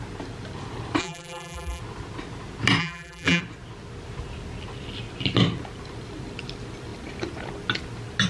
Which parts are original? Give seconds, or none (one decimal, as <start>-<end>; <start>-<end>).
0.0-1.0; 1.8-2.8; 3.4-8.3